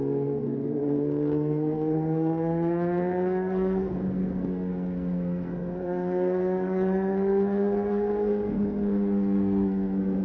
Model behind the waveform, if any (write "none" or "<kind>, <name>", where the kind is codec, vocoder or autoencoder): codec, SNAC